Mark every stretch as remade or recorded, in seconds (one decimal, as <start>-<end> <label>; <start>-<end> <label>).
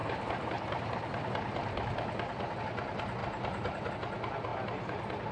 0.0-2.6 remade; 2.6-3.2 recorded; 3.2-3.9 remade; 3.9-4.5 recorded; 4.5-5.3 remade